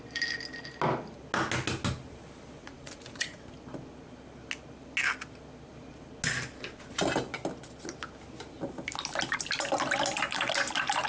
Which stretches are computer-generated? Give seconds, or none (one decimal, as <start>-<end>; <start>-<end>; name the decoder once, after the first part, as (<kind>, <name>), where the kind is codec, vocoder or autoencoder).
2.6-3.4 (vocoder, Vocos)

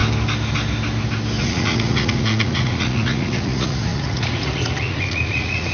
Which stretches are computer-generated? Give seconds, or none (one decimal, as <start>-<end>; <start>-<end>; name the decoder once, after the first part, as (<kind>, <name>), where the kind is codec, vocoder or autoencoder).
1.4-5.7 (vocoder, Vocos)

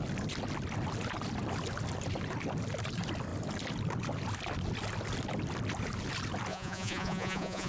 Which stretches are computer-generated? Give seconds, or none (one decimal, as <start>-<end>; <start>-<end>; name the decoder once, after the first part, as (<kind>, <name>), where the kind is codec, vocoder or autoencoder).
6.5-7.7 (vocoder, Vocos)

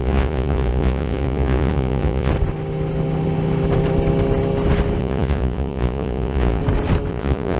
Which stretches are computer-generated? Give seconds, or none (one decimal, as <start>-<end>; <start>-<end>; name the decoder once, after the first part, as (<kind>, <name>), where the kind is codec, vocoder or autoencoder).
0.0-2.3 (vocoder, Vocos); 5.0-6.6; 7.1-7.6

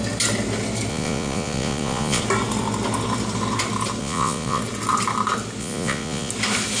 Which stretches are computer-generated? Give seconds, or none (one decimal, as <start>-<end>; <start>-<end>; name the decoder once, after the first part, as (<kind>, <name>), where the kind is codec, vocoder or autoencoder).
0.9-2.2 (vocoder, Vocos); 4.0-4.6; 5.6-6.3

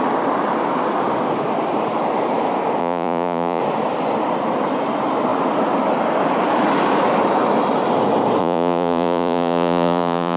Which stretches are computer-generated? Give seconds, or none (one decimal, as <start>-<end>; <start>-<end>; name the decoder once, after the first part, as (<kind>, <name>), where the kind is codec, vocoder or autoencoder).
2.8-3.6 (vocoder, Vocos); 8.4-10.4